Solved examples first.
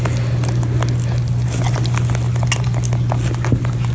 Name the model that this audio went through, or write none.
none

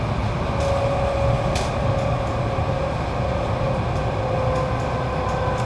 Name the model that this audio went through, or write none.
none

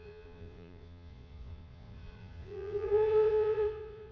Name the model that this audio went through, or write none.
vocoder, Vocos